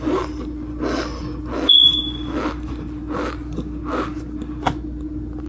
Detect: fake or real real